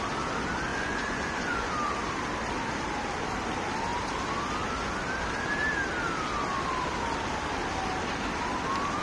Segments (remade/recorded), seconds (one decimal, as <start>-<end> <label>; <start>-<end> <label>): 0.0-0.7 recorded; 0.7-1.7 remade; 1.7-9.0 recorded

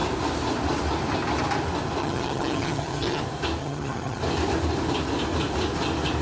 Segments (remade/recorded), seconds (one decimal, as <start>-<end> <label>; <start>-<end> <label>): 0.0-2.0 recorded; 2.0-3.2 remade; 3.2-3.6 recorded; 3.6-4.2 remade; 4.2-6.2 recorded

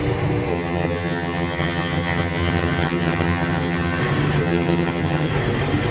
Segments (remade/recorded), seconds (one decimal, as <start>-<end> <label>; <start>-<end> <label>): 0.0-0.5 recorded; 0.5-4.0 remade; 4.0-4.4 recorded; 4.4-5.3 remade; 5.3-5.9 recorded

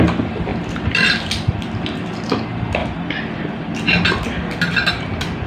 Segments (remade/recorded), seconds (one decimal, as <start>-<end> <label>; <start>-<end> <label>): 0.0-0.5 recorded; 0.5-1.1 remade; 1.1-5.5 recorded

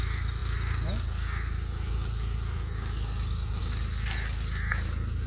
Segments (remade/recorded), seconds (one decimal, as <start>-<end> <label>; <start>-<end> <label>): 0.0-5.3 recorded

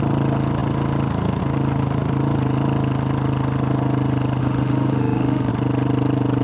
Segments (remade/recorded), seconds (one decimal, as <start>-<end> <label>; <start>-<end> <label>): 0.0-4.4 recorded; 4.4-5.5 remade; 5.5-6.4 recorded

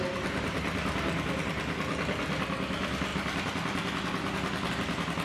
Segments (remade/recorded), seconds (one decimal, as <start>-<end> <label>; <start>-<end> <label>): 0.0-5.2 recorded

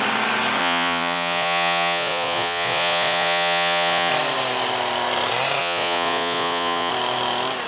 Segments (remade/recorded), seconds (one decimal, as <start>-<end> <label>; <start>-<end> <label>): 0.0-0.6 recorded; 0.6-4.1 remade; 4.1-5.6 recorded; 5.6-6.9 remade; 6.9-7.7 recorded